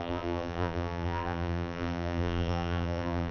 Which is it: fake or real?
fake